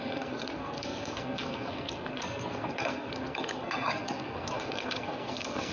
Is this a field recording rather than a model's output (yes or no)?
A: no